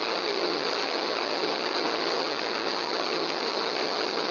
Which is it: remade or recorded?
remade